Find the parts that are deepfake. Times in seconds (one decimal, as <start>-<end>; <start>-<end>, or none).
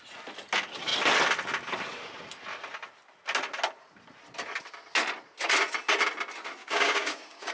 6.6-7.5